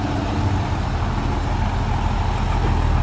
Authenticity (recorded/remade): recorded